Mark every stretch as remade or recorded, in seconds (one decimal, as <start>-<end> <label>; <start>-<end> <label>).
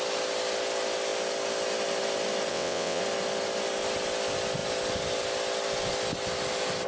0.0-2.5 recorded; 2.5-3.0 remade; 3.0-6.9 recorded